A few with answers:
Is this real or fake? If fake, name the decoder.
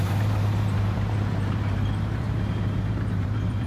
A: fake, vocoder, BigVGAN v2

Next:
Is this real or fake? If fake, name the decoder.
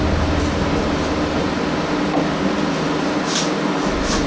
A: real